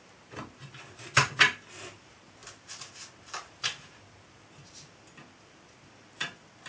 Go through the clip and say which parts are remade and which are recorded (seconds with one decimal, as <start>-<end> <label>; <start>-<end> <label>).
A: 0.0-6.7 recorded